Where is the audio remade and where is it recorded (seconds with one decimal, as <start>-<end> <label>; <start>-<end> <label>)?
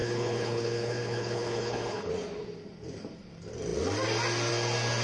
0.0-2.1 remade; 2.1-5.0 recorded